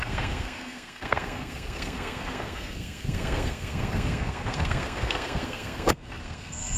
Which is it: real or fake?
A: fake